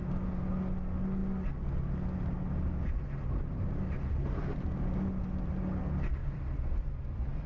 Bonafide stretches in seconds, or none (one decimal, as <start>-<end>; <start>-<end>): 0.0-6.2